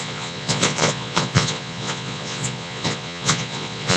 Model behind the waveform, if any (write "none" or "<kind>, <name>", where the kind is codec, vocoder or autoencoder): vocoder, Vocos